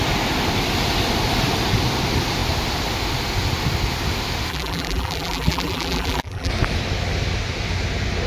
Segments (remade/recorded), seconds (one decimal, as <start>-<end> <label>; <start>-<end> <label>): 0.0-4.5 recorded; 4.5-6.5 remade; 6.5-8.3 recorded